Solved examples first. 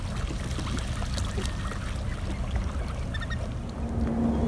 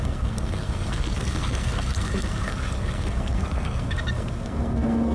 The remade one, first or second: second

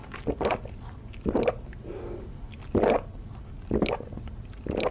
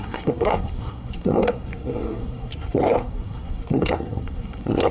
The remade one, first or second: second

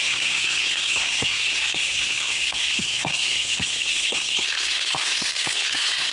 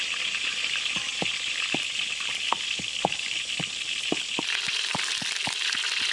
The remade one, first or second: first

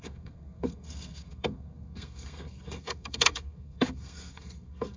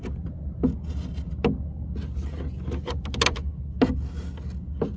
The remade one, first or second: first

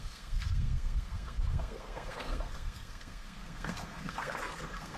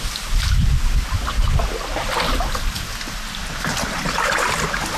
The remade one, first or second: first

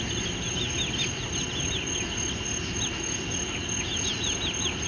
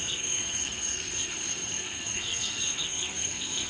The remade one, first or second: second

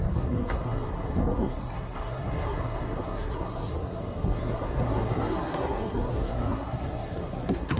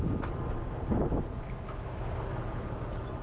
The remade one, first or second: first